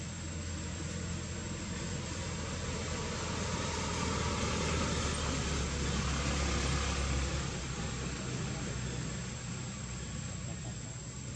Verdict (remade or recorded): recorded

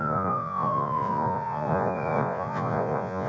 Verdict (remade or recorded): remade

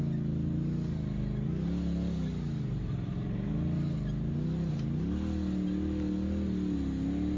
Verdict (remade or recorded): recorded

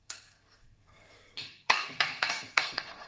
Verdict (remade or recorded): remade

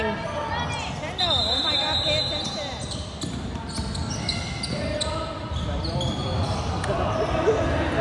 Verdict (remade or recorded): recorded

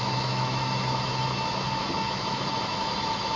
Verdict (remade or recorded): remade